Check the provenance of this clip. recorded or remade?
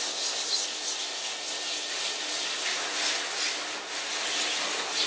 recorded